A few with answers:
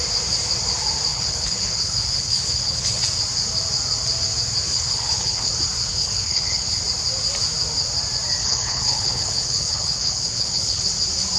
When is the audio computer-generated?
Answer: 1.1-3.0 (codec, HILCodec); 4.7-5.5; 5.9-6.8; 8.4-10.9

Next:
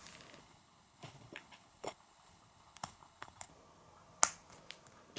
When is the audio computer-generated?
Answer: 0.4-3.5 (codec, HILCodec)

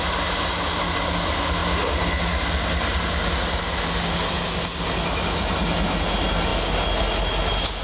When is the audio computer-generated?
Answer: none

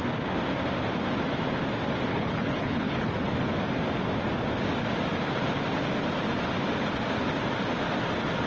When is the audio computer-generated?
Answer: 2.1-3.1 (codec, HILCodec)